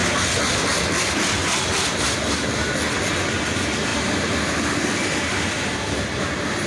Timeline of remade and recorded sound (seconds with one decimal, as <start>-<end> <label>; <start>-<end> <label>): 0.0-6.7 recorded